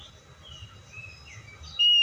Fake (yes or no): no